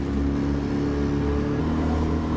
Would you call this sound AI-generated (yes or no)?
no